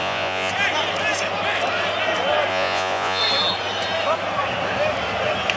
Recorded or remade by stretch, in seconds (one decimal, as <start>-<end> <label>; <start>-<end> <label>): 0.0-0.5 remade; 0.5-2.5 recorded; 2.5-3.2 remade; 3.2-5.6 recorded